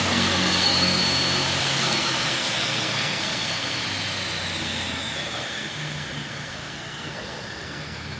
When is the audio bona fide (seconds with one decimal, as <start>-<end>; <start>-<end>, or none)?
1.0-1.6; 3.8-4.6